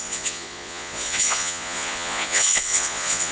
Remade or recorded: remade